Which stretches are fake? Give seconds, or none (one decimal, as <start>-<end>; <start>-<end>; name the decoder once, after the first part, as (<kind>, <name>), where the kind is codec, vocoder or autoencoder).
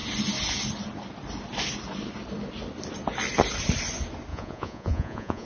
4.3-5.5 (vocoder, Vocos)